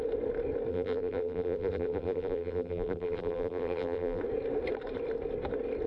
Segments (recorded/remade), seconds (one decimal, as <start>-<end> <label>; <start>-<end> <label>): 0.0-0.7 recorded; 0.7-4.2 remade; 4.2-5.9 recorded